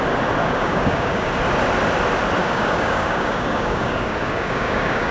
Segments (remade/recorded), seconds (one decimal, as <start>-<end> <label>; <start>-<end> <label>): 0.0-0.4 recorded; 0.4-1.3 remade; 1.3-2.4 recorded; 2.4-5.1 remade